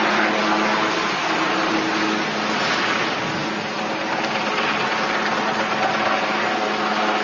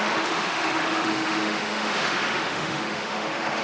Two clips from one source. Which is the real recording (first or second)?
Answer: first